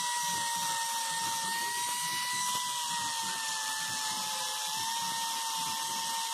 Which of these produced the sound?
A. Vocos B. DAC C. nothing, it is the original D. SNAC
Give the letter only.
C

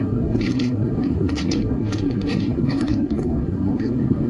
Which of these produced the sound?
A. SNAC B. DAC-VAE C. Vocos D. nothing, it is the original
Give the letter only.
A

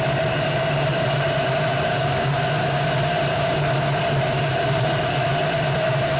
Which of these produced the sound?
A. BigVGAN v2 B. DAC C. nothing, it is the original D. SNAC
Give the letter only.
A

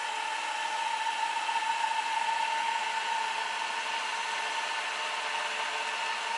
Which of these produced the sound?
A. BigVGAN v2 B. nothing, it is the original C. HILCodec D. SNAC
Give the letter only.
B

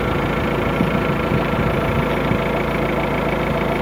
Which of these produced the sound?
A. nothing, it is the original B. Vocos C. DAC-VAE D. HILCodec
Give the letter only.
A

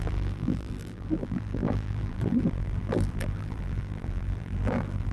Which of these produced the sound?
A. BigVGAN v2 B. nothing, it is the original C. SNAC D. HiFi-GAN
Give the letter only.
A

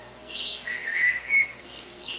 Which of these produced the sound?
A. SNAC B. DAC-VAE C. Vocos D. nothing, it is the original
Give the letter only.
A